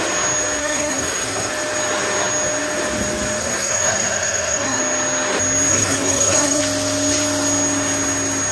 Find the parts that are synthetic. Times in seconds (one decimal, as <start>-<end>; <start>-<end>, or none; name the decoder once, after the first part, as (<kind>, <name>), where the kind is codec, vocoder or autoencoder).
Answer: 0.6-1.5 (codec, SNAC); 3.4-4.8; 5.7-6.6